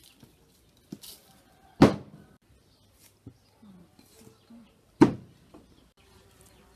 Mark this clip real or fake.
real